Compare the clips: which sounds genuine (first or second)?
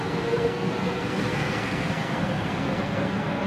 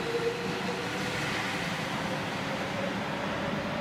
second